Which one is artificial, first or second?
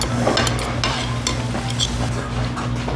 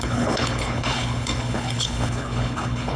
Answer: second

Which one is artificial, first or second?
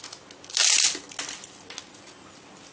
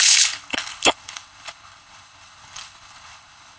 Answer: second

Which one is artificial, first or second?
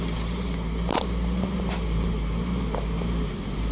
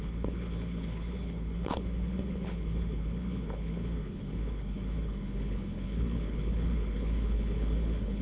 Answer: second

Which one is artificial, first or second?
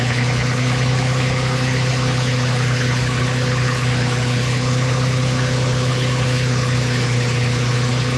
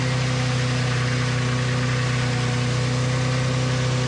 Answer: first